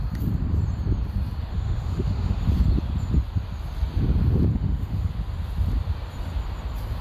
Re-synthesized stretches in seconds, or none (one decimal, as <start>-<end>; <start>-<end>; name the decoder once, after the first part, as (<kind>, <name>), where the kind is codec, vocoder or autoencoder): 1.5-2.4 (autoencoder, DAC-VAE); 4.5-5.1